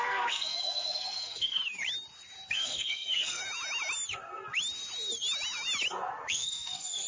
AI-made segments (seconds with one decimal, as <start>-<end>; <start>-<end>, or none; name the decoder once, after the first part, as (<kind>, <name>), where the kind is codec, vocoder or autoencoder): 0.0-1.6 (codec, SNAC); 2.5-3.4; 6.3-7.1